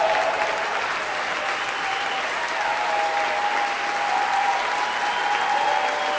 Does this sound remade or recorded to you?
recorded